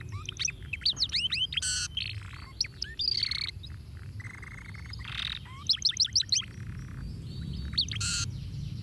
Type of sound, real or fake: real